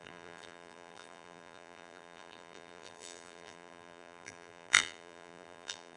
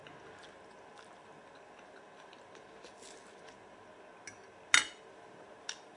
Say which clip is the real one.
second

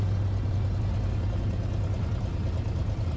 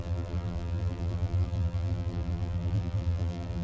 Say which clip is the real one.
first